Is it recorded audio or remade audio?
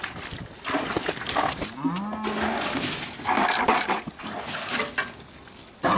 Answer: recorded